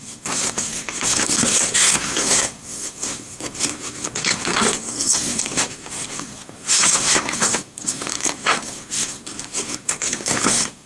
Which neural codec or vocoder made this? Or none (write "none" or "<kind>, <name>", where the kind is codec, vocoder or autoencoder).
codec, SNAC